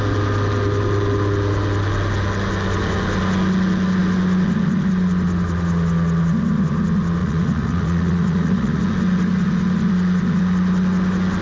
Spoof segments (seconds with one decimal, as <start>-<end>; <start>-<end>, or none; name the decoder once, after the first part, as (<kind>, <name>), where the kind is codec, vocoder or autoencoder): 7.2-8.8 (vocoder, Vocos)